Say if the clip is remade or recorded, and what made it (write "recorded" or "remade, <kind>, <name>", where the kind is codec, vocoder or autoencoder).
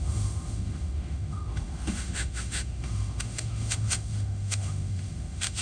remade, autoencoder, DAC-VAE